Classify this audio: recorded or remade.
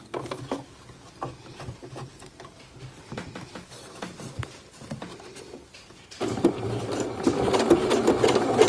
recorded